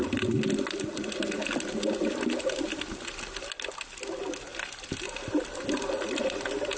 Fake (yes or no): no